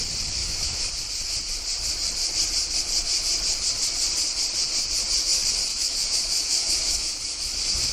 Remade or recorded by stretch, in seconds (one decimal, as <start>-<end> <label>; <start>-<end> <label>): 0.0-0.4 recorded; 0.4-0.9 remade; 0.9-5.7 recorded; 5.7-7.9 remade